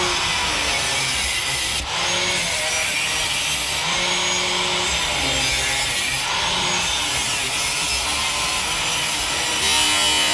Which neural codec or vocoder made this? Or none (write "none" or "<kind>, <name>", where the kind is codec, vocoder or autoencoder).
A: none